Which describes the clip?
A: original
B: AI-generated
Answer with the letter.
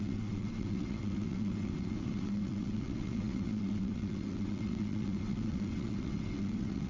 B